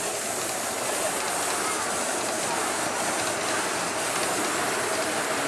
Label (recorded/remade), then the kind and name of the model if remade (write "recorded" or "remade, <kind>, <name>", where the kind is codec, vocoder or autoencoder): recorded